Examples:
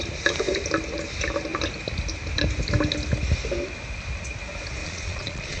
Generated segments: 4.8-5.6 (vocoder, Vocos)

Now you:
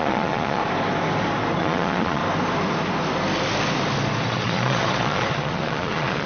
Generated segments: 0.0-0.6 (vocoder, Vocos); 1.6-2.2; 4.3-6.3

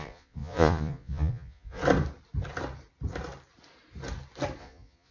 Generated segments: 0.0-1.8 (vocoder, Vocos); 4.6-5.1

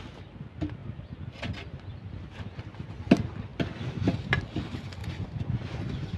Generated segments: 5.0-6.2 (vocoder, Vocos)

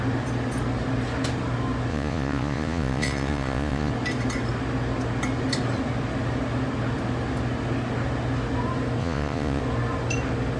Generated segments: 1.9-3.9 (vocoder, Vocos); 9.0-9.6

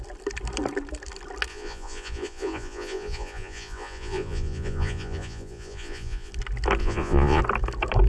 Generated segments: 1.5-6.3 (vocoder, Vocos); 6.8-7.4

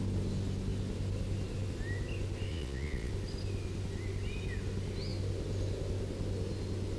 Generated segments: 2.5-3.1 (vocoder, Vocos)